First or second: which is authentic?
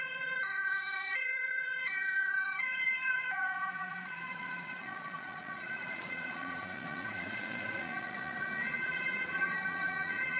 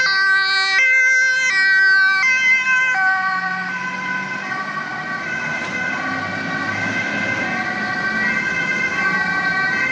second